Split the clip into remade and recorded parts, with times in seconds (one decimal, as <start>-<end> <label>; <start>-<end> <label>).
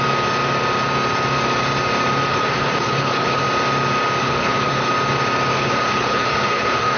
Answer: 0.0-2.3 recorded; 2.3-3.4 remade; 3.4-4.2 recorded; 4.2-4.9 remade; 4.9-5.5 recorded; 5.5-7.0 remade